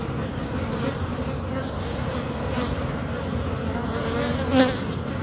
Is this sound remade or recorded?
recorded